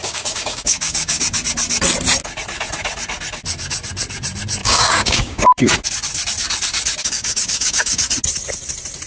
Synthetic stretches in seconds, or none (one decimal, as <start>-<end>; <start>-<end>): 0.0-1.2; 4.6-5.7; 7.0-8.0